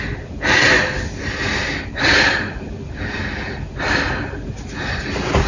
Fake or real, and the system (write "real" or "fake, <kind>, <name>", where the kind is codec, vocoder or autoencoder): real